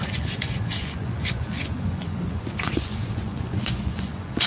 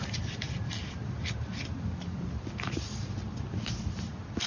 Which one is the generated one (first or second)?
first